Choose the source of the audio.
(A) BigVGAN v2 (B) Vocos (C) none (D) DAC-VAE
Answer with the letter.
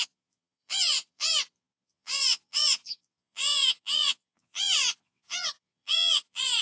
B